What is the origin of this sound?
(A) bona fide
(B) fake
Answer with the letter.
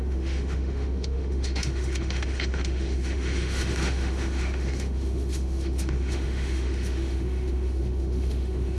B